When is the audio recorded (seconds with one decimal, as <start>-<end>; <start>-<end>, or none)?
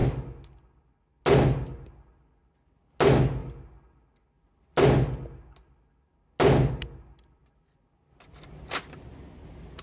0.0-9.8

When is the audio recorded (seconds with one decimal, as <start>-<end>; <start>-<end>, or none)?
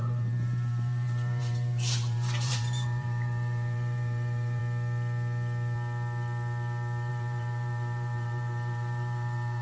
4.6-7.1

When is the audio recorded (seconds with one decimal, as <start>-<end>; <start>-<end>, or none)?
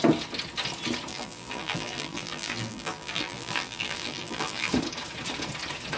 0.0-1.1; 4.7-6.0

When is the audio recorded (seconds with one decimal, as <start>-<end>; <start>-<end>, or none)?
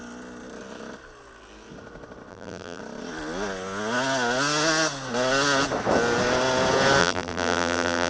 0.0-2.3; 2.8-7.0